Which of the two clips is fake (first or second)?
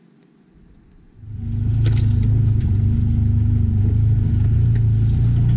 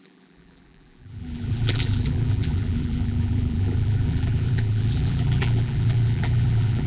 second